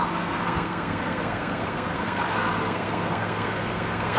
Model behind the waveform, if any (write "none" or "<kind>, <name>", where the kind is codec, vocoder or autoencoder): codec, SNAC